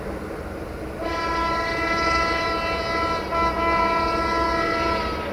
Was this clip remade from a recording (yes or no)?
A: no